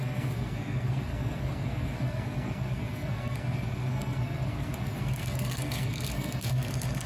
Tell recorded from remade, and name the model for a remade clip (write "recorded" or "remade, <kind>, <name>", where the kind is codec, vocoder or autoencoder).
remade, codec, SNAC